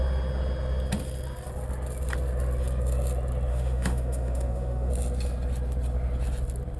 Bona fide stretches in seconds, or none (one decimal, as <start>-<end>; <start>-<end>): 0.0-3.5; 4.9-6.8

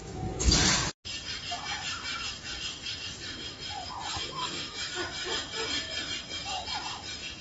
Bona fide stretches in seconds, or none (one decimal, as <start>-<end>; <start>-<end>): 0.5-4.1; 4.9-7.4

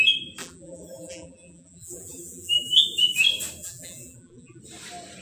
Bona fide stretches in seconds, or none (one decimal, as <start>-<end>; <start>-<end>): 0.0-0.4; 2.8-3.6; 4.6-5.2

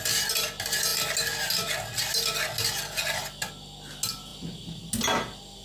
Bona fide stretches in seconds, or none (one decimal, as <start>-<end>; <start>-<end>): 0.0-5.6

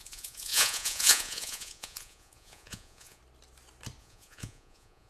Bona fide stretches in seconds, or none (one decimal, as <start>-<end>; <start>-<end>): 3.2-4.0

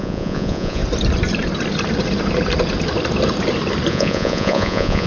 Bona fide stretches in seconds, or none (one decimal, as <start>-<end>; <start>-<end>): 0.8-3.9

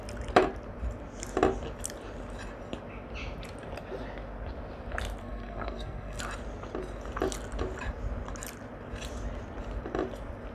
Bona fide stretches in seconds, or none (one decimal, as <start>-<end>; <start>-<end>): 0.0-5.2; 6.2-10.5

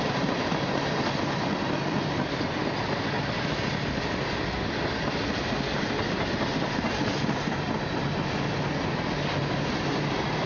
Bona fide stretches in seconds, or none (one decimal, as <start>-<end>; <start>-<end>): 0.0-10.5